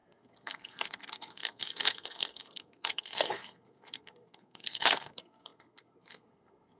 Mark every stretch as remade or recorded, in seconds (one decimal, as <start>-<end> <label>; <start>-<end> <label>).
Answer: 0.0-6.8 remade